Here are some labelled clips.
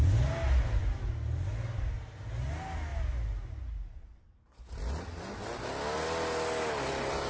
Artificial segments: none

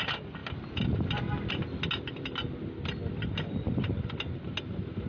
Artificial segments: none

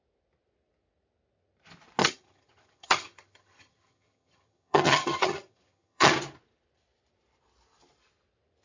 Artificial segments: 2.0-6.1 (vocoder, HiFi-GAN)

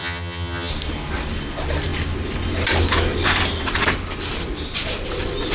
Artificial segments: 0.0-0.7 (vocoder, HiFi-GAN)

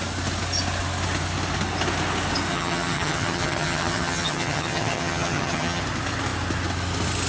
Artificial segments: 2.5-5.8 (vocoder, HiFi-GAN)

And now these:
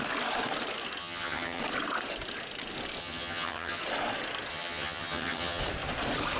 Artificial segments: 1.0-1.6 (vocoder, HiFi-GAN); 3.0-3.8; 4.5-5.6